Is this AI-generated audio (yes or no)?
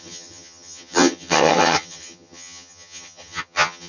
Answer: yes